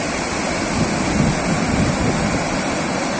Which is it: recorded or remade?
recorded